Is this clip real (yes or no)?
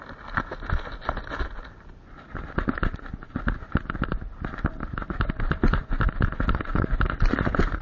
yes